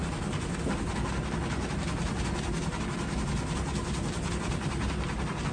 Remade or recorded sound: recorded